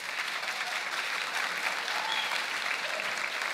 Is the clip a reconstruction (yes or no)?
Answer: yes